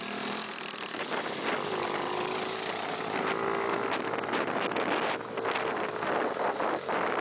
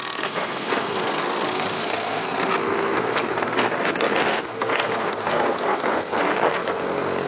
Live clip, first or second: first